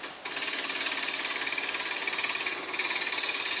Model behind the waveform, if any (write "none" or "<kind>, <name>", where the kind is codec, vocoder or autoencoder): none